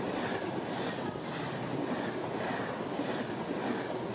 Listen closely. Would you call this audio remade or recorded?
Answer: recorded